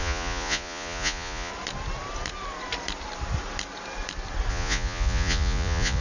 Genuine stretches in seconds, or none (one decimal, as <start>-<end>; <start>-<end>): 1.5-4.5